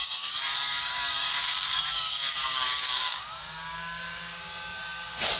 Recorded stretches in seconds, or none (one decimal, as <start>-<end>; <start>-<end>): none